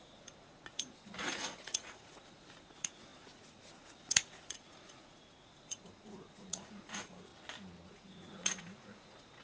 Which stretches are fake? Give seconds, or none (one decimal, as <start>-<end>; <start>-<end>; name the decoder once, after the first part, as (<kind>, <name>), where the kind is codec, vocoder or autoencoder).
0.0-7.3 (vocoder, Vocos); 7.9-9.4